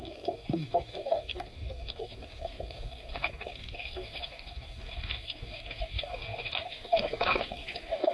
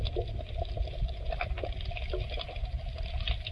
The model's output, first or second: first